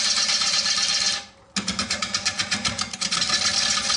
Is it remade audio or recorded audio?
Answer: recorded